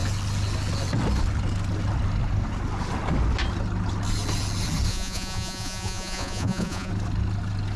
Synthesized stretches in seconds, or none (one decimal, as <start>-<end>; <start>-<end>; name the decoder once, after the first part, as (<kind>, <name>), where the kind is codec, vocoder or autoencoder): 4.9-6.9 (vocoder, Vocos)